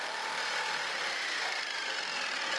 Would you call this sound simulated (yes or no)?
no